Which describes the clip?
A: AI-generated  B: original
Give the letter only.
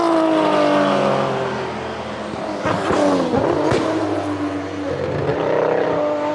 B